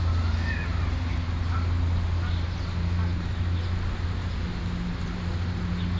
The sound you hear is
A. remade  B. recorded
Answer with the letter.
B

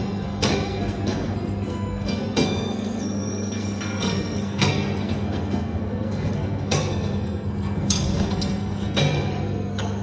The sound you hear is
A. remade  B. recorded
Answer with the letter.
A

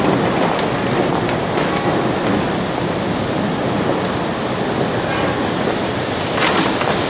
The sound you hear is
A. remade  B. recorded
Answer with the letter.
B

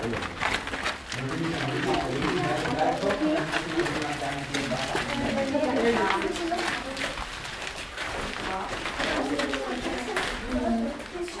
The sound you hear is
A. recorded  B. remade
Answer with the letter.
A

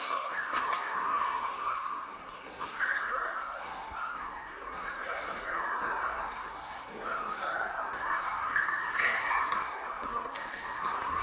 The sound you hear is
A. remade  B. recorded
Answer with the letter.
A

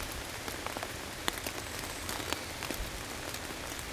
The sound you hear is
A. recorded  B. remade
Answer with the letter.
A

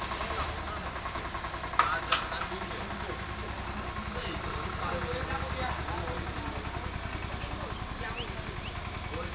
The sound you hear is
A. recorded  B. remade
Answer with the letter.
A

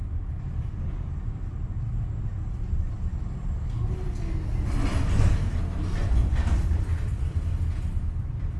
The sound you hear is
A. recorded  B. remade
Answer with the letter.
A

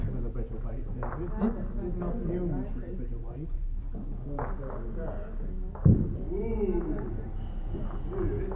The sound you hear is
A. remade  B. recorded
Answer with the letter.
B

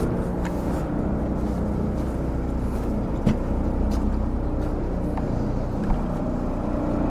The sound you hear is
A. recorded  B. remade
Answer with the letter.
A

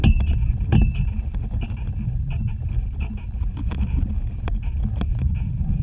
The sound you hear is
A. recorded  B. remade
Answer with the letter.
A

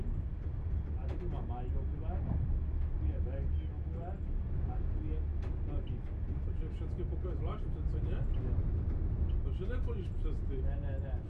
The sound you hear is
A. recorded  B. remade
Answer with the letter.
A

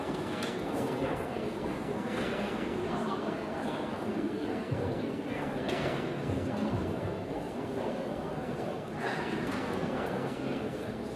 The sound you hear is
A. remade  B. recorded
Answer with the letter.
A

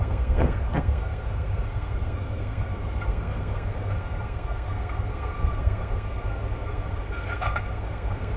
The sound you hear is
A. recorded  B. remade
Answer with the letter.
B